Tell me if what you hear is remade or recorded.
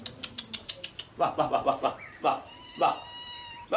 recorded